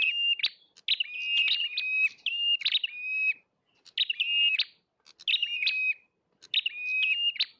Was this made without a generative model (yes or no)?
yes